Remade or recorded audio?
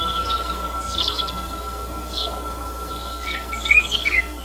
remade